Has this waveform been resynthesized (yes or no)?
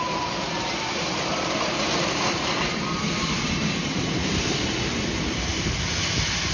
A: yes